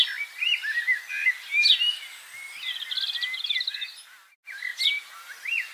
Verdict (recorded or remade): recorded